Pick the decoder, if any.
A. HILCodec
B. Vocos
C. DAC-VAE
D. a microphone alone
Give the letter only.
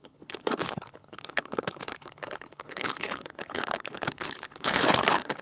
A